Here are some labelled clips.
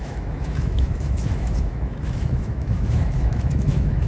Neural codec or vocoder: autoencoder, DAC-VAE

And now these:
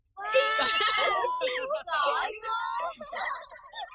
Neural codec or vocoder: none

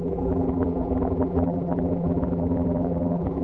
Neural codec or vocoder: vocoder, BigVGAN v2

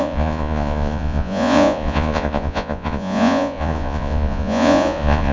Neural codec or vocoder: vocoder, Vocos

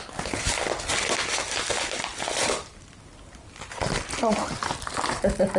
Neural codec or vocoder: none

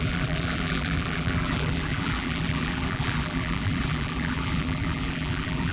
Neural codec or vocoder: vocoder, BigVGAN v2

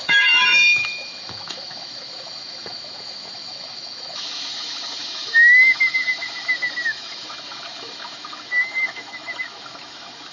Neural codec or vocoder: autoencoder, DAC-VAE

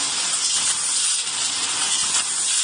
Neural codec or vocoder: none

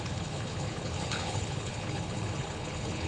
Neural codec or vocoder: codec, HILCodec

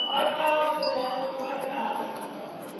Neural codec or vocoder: codec, SNAC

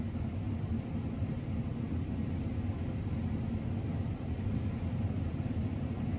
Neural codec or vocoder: none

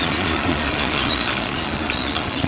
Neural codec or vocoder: vocoder, Vocos